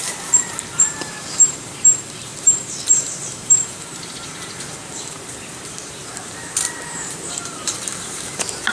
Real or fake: fake